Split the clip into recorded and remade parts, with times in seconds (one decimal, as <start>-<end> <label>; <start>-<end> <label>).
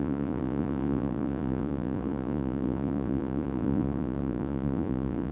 0.0-5.3 remade